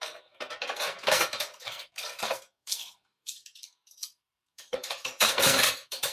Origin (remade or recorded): remade